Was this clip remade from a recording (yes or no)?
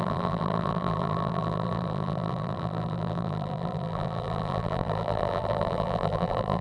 yes